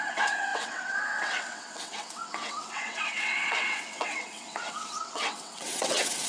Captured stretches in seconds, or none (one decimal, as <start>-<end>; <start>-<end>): none